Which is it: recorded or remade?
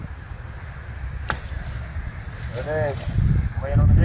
recorded